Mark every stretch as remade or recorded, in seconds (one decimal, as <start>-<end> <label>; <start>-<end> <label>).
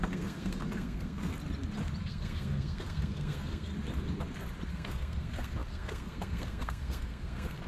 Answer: 0.0-1.3 remade; 1.3-2.0 recorded; 2.0-3.7 remade; 3.7-4.7 recorded; 4.7-7.7 remade